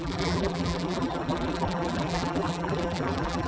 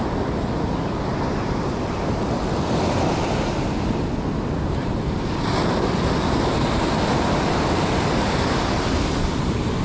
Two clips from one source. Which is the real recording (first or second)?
second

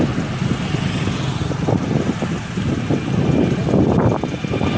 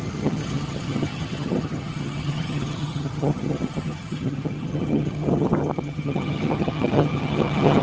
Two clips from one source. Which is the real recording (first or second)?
first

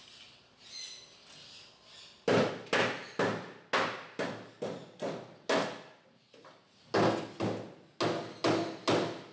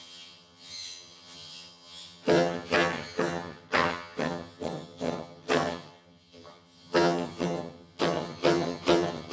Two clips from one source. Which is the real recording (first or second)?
first